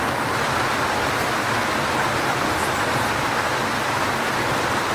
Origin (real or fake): real